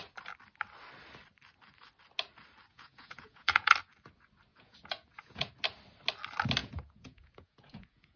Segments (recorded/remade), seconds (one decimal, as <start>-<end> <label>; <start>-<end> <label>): 0.0-2.7 recorded; 2.7-3.7 remade; 3.7-4.5 recorded; 4.5-5.5 remade; 5.5-6.6 recorded; 6.6-8.2 remade